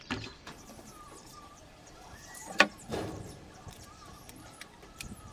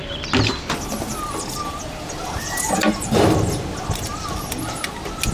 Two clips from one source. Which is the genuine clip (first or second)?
second